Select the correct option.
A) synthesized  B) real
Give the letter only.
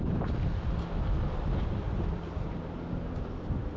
B